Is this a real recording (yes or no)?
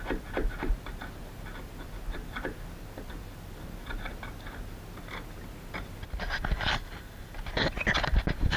yes